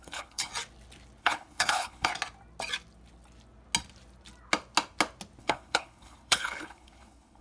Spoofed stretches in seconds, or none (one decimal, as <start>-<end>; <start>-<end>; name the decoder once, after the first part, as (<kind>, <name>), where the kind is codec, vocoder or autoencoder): 0.0-0.5 (codec, HILCodec); 1.2-2.1; 5.4-7.4